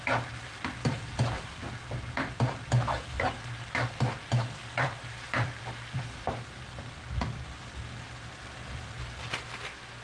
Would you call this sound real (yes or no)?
no